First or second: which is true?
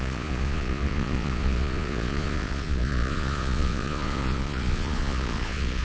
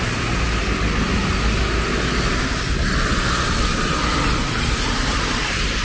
second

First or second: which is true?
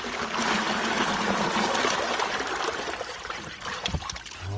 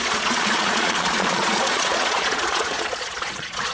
first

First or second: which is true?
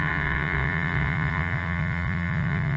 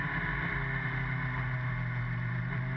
second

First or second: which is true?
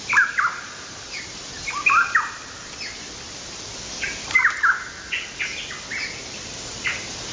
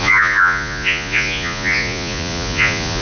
first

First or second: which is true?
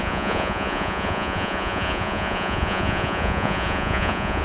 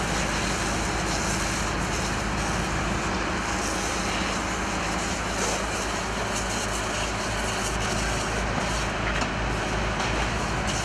second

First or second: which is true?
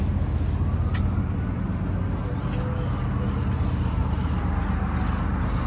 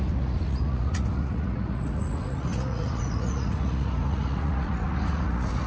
first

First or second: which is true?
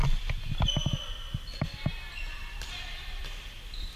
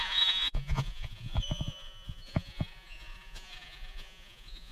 first